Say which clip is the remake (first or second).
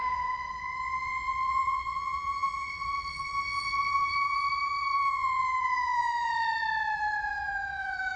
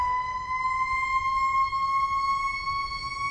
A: first